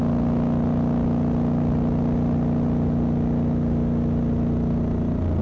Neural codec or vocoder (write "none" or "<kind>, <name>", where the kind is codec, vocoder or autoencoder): none